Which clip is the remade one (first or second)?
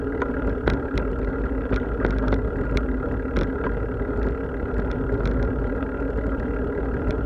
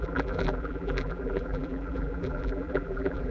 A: second